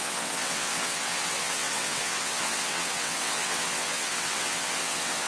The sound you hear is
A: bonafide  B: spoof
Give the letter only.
B